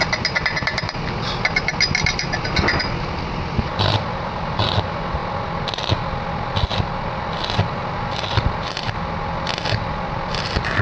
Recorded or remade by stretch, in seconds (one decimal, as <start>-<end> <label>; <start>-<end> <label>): 0.0-10.8 recorded